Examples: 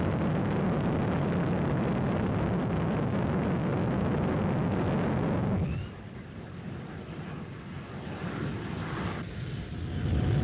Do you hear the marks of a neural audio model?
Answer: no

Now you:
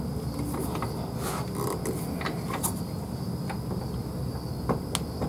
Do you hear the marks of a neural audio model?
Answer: no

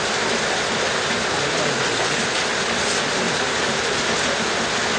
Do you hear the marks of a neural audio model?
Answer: no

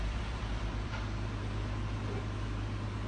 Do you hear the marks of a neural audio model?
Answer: yes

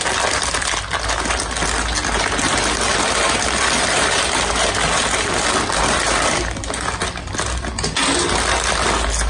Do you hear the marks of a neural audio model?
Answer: no